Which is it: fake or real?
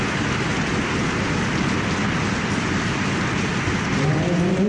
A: real